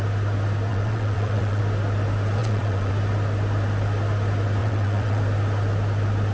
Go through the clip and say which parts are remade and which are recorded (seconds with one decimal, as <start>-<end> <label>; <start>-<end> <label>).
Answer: 0.0-0.7 recorded; 0.7-1.6 remade; 1.6-2.4 recorded; 2.4-2.9 remade; 2.9-4.6 recorded; 4.6-5.2 remade; 5.2-6.3 recorded